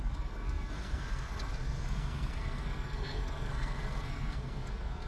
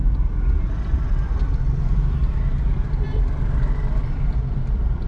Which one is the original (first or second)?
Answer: second